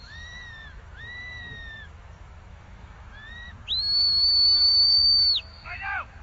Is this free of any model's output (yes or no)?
no